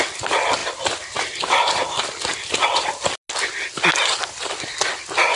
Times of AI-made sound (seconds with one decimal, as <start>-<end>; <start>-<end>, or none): none